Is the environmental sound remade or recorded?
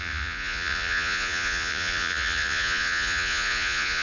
remade